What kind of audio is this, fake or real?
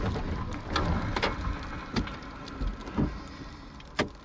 real